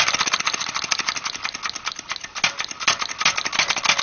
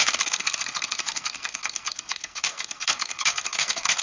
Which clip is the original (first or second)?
first